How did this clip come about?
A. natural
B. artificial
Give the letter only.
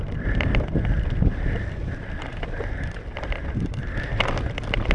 A